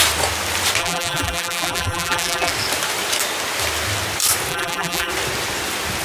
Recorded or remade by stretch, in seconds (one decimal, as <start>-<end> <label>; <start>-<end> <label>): 0.0-0.8 recorded; 0.8-2.5 remade; 2.5-4.5 recorded; 4.5-5.1 remade; 5.1-6.0 recorded